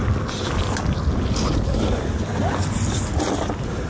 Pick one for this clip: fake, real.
real